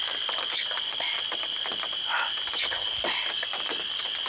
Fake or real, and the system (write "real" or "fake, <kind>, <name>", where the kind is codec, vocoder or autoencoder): real